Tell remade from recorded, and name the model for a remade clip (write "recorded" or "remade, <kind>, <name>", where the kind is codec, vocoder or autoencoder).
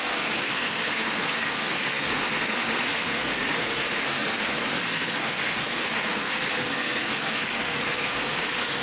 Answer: remade, codec, SNAC